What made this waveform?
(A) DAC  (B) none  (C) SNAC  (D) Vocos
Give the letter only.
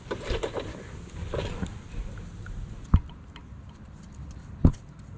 B